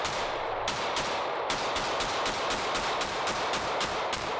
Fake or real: real